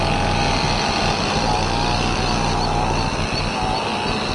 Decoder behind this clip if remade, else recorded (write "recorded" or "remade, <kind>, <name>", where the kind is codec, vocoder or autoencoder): recorded